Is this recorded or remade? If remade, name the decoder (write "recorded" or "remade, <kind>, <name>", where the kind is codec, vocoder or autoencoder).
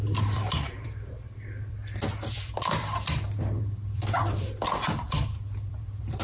remade, vocoder, BigVGAN v2